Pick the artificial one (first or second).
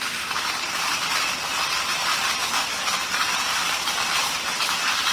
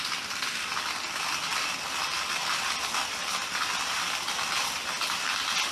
first